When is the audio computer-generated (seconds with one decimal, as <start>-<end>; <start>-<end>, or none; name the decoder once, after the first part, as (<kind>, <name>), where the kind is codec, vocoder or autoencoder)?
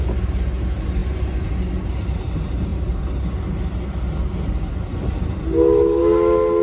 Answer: none